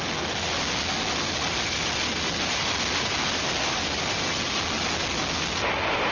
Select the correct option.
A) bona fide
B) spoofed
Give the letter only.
A